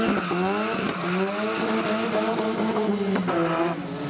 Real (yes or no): yes